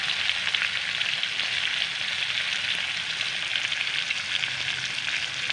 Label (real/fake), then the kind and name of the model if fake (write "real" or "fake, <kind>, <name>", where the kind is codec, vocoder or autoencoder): real